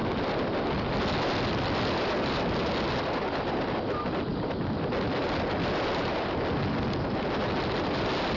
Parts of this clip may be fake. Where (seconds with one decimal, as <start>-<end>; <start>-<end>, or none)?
none